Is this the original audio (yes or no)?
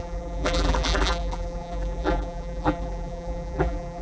no